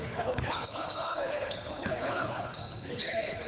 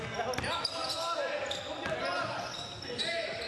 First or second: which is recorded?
second